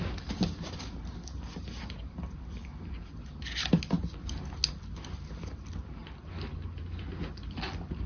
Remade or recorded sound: recorded